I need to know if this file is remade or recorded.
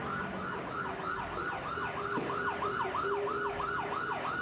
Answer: recorded